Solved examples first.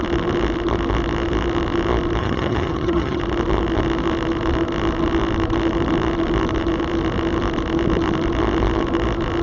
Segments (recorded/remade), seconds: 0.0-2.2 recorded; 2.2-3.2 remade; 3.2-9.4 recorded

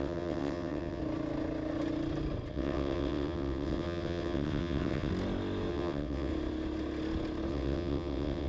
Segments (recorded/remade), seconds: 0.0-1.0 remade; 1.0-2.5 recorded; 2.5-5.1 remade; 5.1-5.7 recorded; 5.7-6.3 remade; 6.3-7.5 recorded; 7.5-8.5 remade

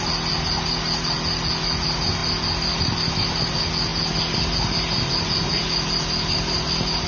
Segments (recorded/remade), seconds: 0.0-7.1 recorded

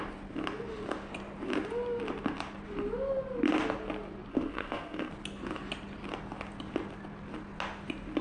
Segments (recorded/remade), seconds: 0.0-4.3 recorded; 4.3-5.1 remade; 5.1-8.2 recorded